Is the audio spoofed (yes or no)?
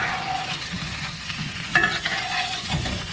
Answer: yes